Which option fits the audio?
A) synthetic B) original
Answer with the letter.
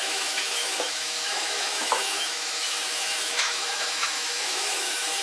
A